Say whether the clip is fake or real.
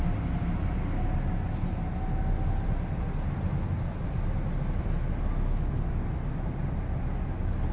real